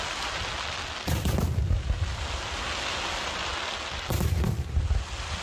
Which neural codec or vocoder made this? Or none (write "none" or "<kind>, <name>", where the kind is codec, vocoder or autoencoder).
none